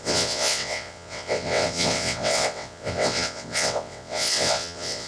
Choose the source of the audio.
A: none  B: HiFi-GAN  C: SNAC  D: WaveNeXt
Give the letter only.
D